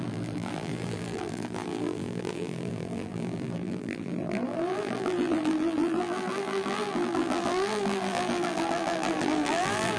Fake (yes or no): yes